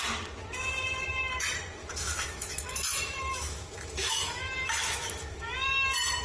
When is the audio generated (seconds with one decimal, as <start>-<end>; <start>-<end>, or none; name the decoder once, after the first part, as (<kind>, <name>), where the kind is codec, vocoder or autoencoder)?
1.8-5.5 (autoencoder, DAC-VAE)